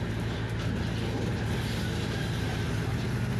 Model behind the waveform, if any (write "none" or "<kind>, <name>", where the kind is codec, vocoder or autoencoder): none